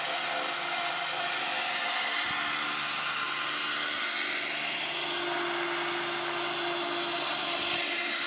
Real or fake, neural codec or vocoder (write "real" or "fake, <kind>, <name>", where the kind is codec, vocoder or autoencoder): real